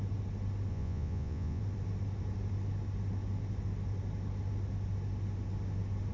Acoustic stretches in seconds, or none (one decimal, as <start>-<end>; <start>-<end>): 0.0-0.7; 1.6-6.1

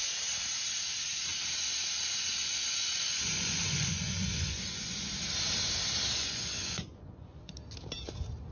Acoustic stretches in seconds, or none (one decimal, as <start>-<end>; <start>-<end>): 0.0-2.4; 5.1-6.2; 7.5-8.5

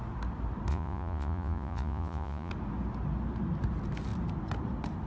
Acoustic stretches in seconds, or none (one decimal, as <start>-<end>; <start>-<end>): 0.0-0.7; 2.5-5.1

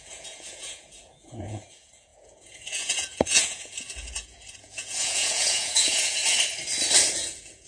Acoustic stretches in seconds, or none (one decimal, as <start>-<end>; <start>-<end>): 6.2-7.1

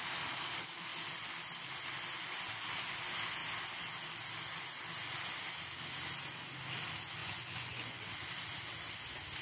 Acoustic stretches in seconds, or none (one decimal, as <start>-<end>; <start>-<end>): 0.0-7.2; 8.0-9.4

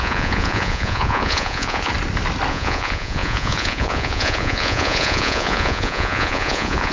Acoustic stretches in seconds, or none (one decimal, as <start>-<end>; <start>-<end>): 1.9-2.5

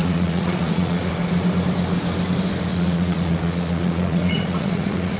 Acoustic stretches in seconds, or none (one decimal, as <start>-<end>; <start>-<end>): 1.1-2.7